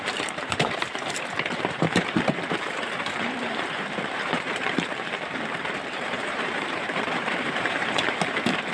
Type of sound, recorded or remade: remade